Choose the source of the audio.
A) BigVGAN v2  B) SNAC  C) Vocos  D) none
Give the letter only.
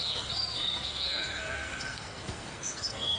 B